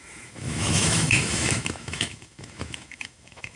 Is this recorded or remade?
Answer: remade